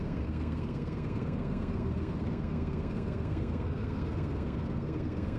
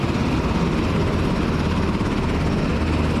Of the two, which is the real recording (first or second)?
second